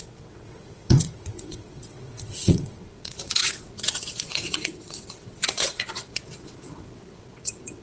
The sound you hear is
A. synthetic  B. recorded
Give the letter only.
A